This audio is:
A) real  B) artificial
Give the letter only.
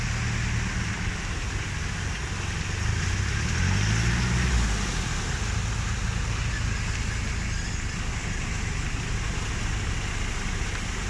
A